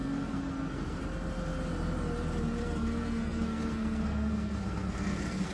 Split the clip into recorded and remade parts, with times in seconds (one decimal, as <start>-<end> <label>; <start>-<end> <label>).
0.0-1.0 remade; 1.0-2.6 recorded; 2.6-5.5 remade

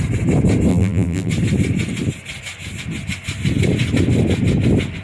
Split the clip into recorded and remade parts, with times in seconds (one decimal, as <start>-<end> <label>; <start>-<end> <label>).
0.0-0.7 recorded; 0.7-1.3 remade; 1.3-5.0 recorded